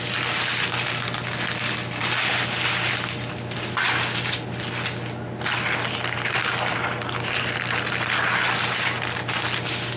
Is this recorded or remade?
recorded